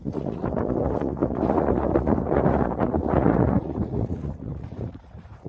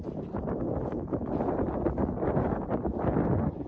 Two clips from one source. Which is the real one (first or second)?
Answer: second